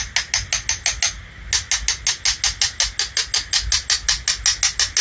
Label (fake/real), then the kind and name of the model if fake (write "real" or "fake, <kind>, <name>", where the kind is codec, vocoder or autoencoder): real